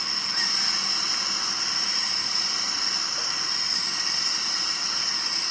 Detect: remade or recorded recorded